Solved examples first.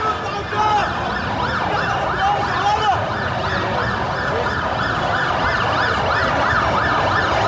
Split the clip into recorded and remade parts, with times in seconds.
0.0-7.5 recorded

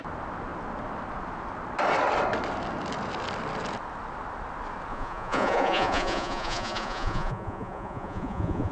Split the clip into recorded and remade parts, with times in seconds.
0.0-4.9 recorded; 4.9-8.7 remade